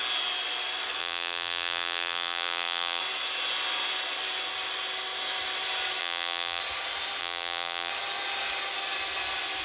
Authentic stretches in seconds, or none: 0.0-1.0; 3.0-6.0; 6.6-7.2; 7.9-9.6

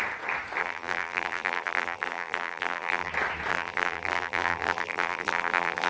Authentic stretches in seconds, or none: 0.0-0.6; 3.1-3.5

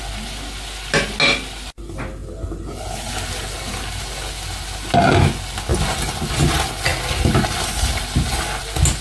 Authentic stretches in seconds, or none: 0.0-9.0

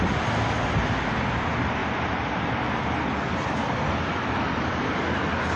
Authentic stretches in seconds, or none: 0.0-1.8; 4.9-5.6

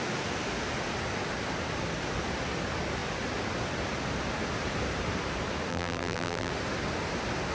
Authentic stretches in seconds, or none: 0.0-5.7; 6.5-7.5